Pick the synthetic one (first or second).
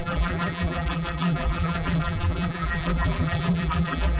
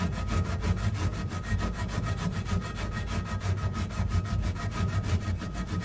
first